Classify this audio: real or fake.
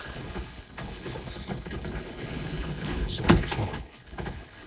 fake